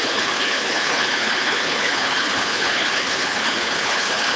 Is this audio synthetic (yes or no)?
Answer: yes